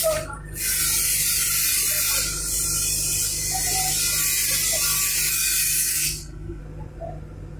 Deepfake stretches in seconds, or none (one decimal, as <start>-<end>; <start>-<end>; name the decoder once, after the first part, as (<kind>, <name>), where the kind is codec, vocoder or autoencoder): 5.3-6.6 (codec, SNAC)